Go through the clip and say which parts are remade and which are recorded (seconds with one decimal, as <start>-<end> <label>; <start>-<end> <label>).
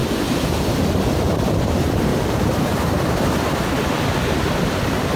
0.0-2.1 recorded; 2.1-3.0 remade; 3.0-5.2 recorded